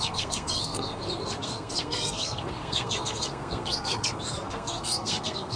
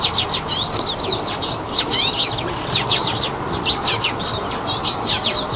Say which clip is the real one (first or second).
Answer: second